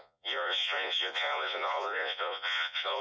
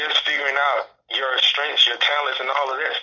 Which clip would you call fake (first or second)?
first